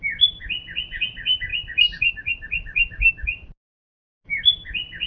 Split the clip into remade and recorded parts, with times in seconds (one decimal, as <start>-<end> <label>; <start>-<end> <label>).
0.0-5.1 recorded